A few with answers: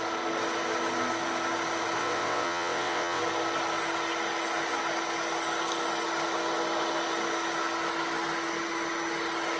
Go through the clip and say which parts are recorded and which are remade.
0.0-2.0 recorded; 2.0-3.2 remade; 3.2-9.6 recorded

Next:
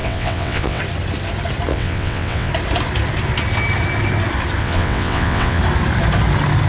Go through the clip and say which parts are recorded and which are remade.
0.0-0.8 remade; 0.8-1.7 recorded; 1.7-2.5 remade; 2.5-4.6 recorded; 4.6-5.6 remade; 5.6-6.7 recorded

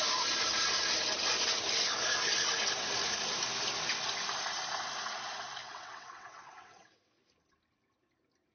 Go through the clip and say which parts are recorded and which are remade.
0.0-5.6 recorded; 5.6-7.2 remade; 7.2-8.5 recorded

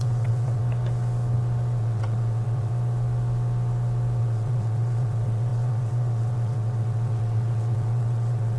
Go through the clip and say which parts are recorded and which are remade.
0.0-0.6 remade; 0.6-1.8 recorded; 1.8-2.7 remade; 2.7-4.2 recorded; 4.2-8.6 remade

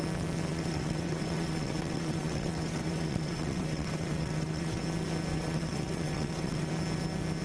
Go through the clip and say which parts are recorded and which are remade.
0.0-0.5 recorded; 0.5-4.8 remade; 4.8-5.3 recorded; 5.3-6.7 remade; 6.7-7.4 recorded

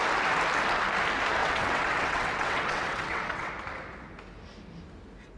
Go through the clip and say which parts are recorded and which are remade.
0.0-1.4 recorded; 1.4-3.5 remade; 3.5-5.4 recorded